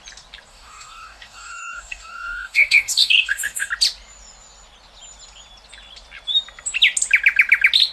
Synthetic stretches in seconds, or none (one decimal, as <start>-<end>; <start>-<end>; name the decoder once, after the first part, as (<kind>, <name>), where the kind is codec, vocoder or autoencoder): 0.5-3.7 (codec, DAC)